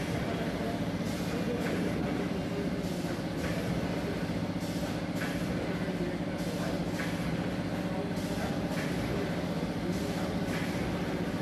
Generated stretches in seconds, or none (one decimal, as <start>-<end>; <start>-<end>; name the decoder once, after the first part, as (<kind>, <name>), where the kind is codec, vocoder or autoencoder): none